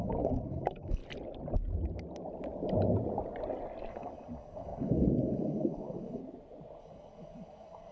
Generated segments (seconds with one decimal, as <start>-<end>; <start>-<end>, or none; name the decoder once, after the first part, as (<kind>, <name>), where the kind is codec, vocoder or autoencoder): 0.0-1.0 (codec, DAC); 3.9-6.2; 6.8-7.9